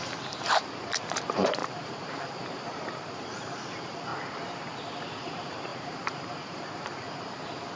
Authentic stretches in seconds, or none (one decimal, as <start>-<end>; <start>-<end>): 4.1-5.2